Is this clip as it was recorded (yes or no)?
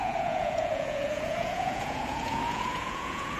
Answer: no